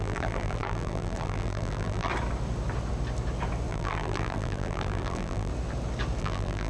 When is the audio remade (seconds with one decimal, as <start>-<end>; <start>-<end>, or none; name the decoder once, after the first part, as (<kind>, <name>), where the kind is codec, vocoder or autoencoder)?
0.0-2.1 (vocoder, BigVGAN v2); 3.7-5.5; 6.2-6.7